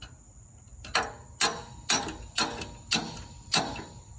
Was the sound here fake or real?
real